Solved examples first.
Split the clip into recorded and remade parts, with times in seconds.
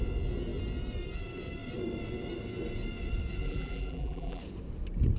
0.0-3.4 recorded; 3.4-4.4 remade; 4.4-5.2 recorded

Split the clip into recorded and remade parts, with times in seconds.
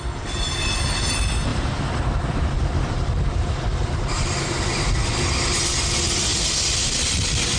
0.0-1.5 recorded; 1.5-4.9 remade; 4.9-7.6 recorded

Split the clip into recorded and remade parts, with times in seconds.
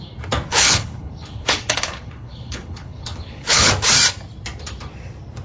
0.0-0.5 recorded; 0.5-3.7 remade; 3.7-5.4 recorded